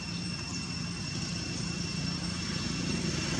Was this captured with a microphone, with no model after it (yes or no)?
yes